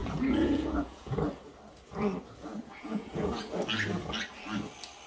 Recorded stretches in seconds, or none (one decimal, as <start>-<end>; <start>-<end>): 1.1-2.6; 3.5-5.1